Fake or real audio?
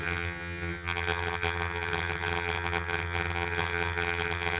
fake